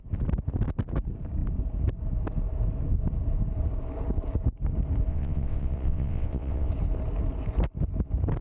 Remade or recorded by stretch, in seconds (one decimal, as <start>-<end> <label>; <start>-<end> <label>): 0.0-5.1 recorded; 5.1-6.7 remade; 6.7-8.4 recorded